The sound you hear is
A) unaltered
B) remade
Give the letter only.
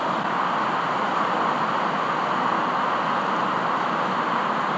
A